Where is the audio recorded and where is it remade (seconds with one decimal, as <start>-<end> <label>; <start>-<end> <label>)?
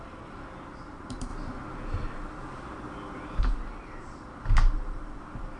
0.0-1.3 remade; 1.3-3.4 recorded; 3.4-5.6 remade